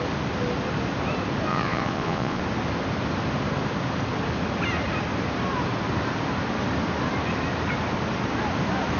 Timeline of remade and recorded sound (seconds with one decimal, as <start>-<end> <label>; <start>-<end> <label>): 0.0-1.5 recorded; 1.5-2.4 remade; 2.4-9.0 recorded